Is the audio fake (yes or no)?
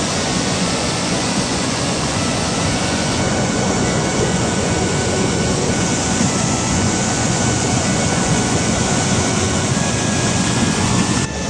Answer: yes